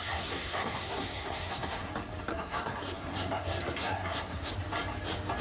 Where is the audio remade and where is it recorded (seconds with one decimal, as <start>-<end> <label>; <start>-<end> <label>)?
0.0-1.9 remade; 1.9-2.3 recorded; 2.3-4.5 remade; 4.5-5.4 recorded